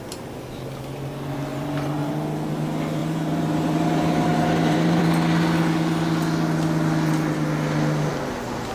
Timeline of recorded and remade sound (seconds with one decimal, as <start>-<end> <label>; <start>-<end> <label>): 0.0-1.5 recorded; 1.5-2.1 remade; 2.1-3.0 recorded; 3.0-5.0 remade; 5.0-8.7 recorded